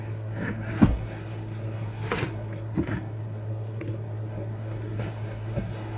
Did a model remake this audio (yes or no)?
yes